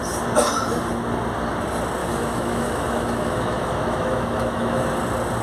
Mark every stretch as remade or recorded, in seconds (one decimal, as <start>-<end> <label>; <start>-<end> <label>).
0.0-2.0 recorded; 2.0-4.8 remade; 4.8-5.4 recorded